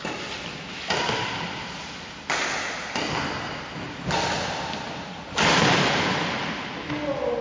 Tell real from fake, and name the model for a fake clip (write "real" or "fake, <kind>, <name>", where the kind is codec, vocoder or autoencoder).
real